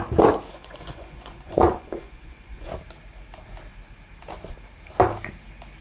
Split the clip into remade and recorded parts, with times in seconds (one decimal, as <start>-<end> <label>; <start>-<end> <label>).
0.0-0.5 recorded; 0.5-2.7 remade; 2.7-5.8 recorded